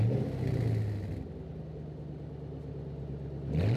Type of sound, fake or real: real